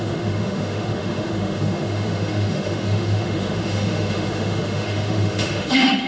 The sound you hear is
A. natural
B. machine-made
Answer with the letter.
B